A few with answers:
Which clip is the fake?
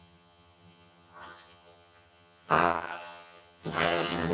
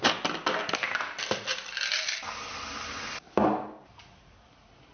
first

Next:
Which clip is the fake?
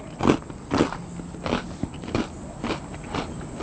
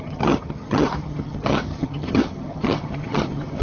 second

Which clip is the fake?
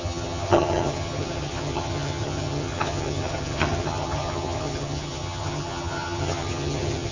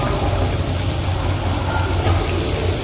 first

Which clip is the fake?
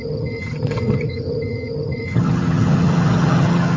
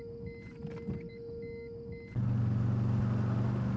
first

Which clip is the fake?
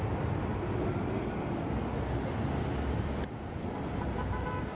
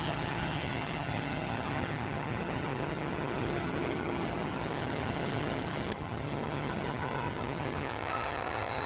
second